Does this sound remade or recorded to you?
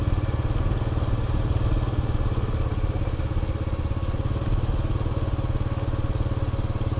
recorded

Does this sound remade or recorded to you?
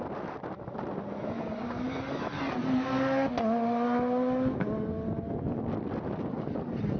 recorded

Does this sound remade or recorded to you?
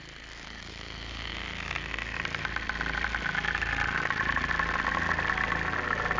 recorded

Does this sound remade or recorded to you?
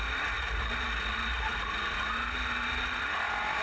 recorded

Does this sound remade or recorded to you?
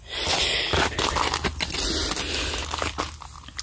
recorded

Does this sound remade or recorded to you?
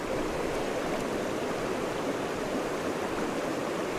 recorded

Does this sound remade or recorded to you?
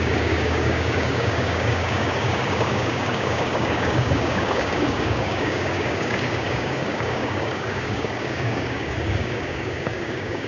remade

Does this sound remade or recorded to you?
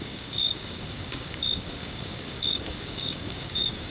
remade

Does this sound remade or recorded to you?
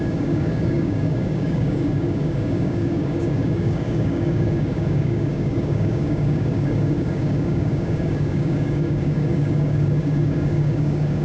remade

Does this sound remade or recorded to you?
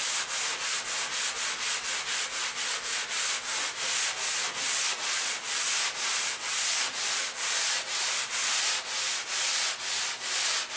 recorded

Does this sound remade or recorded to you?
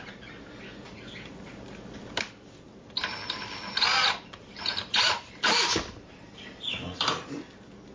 recorded